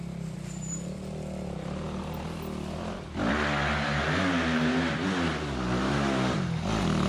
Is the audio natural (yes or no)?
yes